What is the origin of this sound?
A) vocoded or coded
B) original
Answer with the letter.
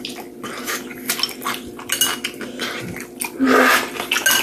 B